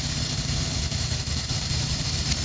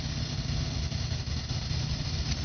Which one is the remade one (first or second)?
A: first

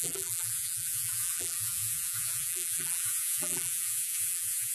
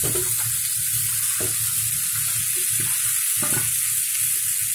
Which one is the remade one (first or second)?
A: first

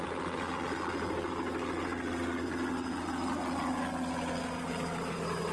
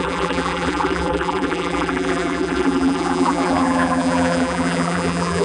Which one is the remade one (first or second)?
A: second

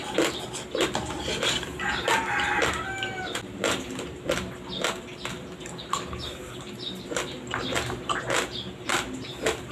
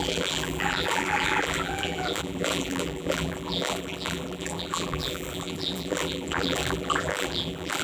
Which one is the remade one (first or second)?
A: second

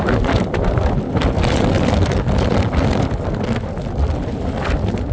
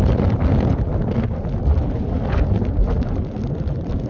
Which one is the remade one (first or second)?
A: first